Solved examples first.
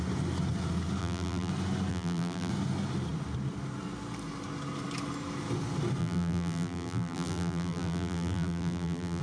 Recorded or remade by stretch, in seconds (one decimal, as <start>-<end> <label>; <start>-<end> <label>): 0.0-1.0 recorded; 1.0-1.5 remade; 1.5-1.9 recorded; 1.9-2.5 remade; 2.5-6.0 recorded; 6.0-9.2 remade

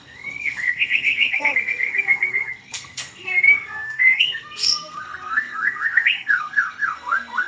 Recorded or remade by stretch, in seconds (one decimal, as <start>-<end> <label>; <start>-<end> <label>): 0.0-7.5 remade

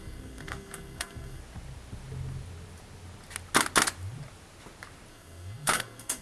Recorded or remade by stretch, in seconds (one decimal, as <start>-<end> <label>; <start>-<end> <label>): 0.0-1.4 remade; 1.4-5.1 recorded; 5.1-6.2 remade